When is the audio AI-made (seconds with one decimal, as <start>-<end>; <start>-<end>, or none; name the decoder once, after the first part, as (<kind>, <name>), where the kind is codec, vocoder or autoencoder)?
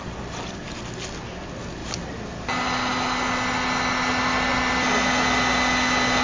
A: none